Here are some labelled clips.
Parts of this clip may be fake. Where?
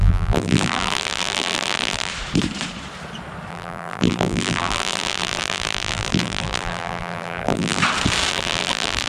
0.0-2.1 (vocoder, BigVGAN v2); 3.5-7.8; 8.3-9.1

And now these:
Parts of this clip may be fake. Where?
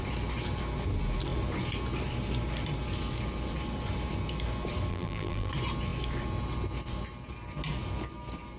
4.9-5.5 (vocoder, BigVGAN v2)